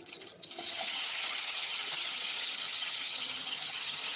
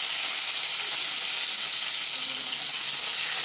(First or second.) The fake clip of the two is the first